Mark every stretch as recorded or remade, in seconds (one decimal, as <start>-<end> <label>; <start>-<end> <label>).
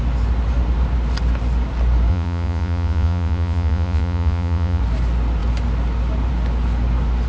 0.0-2.1 recorded; 2.1-4.8 remade; 4.8-7.3 recorded